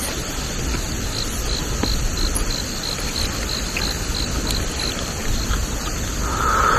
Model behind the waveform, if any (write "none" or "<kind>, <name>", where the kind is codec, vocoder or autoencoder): none